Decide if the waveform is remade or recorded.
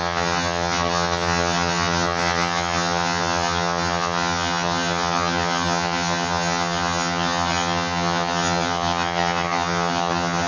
remade